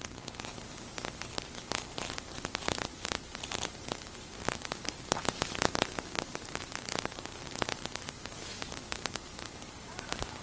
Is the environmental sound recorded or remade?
remade